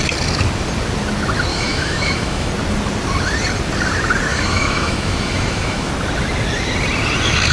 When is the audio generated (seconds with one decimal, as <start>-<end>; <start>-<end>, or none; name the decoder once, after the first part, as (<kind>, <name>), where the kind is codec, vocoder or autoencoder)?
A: 1.5-2.5 (autoencoder, DAC-VAE); 4.3-5.9